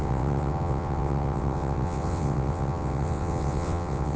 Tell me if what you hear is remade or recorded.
remade